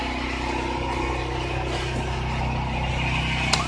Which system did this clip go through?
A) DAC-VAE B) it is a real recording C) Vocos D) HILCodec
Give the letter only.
B